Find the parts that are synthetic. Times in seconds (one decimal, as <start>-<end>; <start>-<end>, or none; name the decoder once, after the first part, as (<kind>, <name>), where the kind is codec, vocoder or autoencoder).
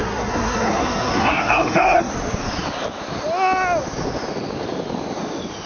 0.0-2.1 (codec, SNAC)